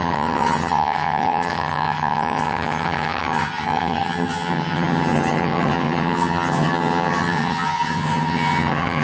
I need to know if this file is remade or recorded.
remade